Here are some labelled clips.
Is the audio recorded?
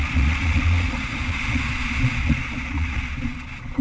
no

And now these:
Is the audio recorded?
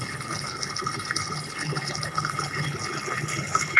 no